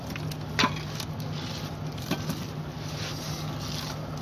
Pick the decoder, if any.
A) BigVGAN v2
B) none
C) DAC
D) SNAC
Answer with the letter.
B